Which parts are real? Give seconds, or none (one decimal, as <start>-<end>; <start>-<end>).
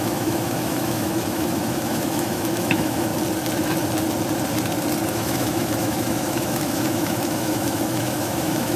3.1-5.1